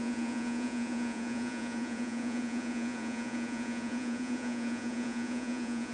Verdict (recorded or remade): remade